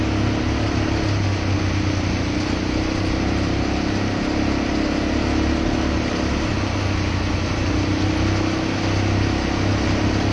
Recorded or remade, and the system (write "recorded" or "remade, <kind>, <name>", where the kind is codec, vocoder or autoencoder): recorded